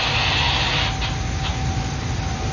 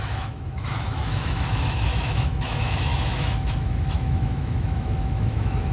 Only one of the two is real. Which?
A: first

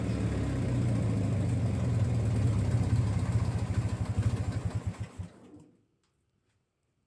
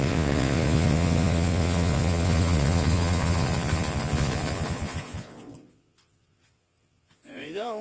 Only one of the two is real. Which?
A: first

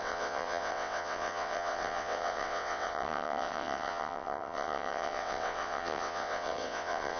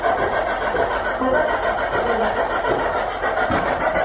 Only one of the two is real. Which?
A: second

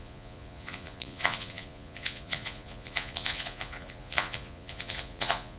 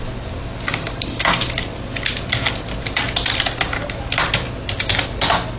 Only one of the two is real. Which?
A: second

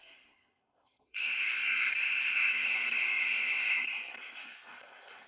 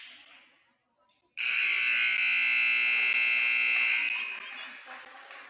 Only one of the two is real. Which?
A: second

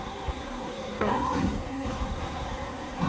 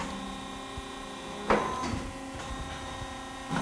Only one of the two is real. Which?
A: second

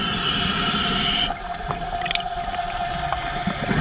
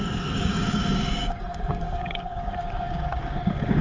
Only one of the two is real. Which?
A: first